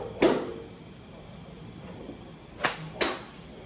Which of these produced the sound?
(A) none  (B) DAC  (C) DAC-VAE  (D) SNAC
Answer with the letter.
A